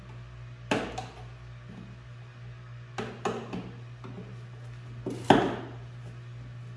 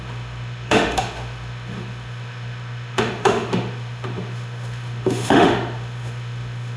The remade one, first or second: second